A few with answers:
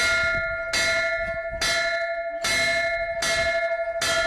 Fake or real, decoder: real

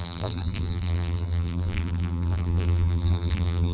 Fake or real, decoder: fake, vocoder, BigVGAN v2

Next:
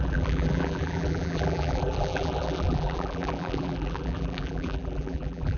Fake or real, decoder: fake, vocoder, BigVGAN v2